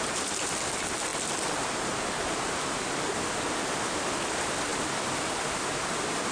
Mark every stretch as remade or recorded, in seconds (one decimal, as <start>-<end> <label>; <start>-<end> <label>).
0.0-6.3 recorded